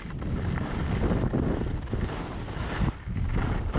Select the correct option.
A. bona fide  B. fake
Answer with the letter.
A